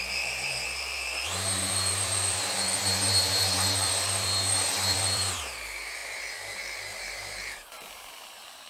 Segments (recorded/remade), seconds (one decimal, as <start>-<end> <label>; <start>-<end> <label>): 0.0-8.7 remade